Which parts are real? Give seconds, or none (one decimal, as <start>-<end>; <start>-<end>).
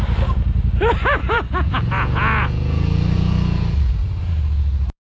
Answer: 0.0-1.2; 4.3-5.1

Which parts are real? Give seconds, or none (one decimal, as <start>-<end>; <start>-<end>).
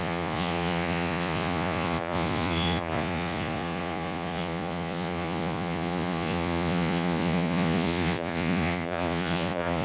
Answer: none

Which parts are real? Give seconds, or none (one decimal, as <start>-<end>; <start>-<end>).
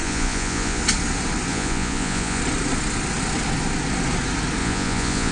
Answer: 0.8-1.5; 2.4-4.6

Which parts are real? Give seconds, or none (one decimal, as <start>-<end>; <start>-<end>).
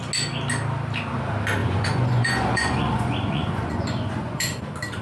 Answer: 0.0-1.6; 4.6-5.0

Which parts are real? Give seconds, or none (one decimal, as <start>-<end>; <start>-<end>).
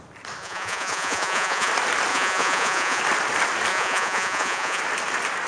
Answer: 0.0-0.4; 1.7-2.1; 3.0-3.7; 4.8-5.5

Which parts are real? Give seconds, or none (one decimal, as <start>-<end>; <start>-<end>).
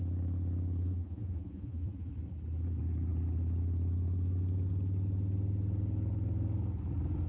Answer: 0.0-0.8; 2.1-7.3